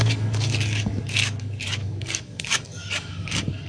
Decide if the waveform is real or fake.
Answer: fake